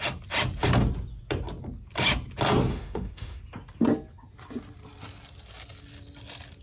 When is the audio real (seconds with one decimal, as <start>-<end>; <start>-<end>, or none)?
0.0-2.7; 3.4-6.6